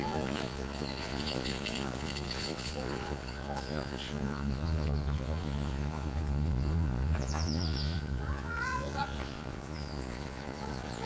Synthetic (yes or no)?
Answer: yes